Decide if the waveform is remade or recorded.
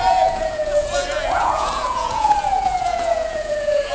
remade